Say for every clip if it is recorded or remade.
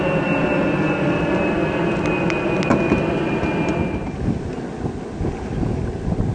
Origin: recorded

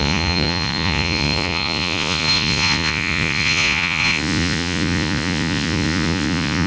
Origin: remade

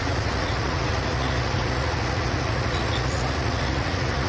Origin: remade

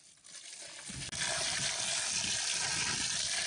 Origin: recorded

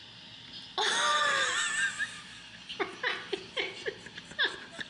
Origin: recorded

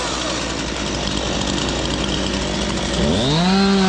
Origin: recorded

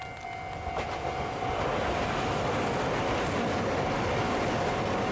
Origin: recorded